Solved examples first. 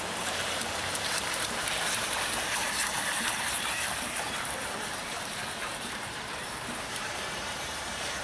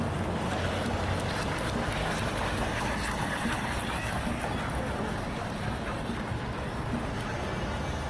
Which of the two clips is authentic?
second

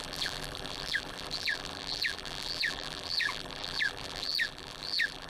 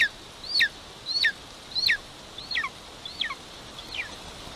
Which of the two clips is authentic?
second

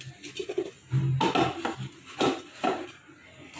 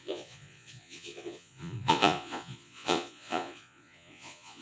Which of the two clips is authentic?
first